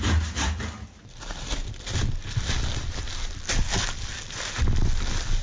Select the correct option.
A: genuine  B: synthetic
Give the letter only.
A